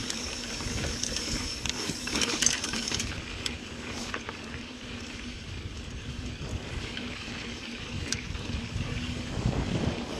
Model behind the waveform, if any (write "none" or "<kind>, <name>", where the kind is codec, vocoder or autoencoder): codec, DAC